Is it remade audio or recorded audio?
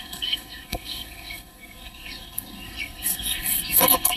remade